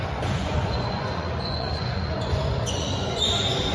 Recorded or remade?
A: remade